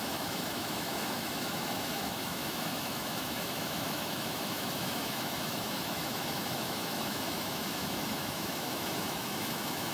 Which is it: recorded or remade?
remade